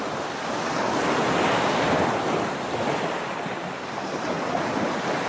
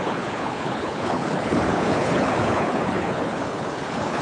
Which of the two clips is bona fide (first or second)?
first